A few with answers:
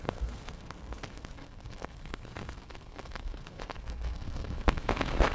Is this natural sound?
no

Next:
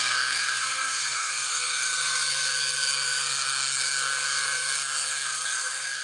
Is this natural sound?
no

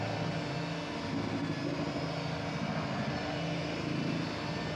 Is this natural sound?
yes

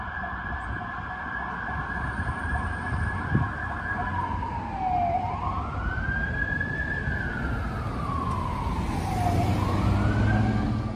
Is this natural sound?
yes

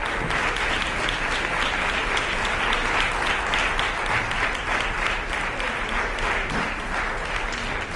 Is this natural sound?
yes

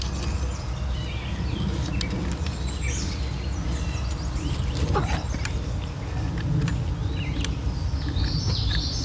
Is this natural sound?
yes